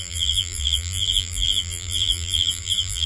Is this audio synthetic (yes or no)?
yes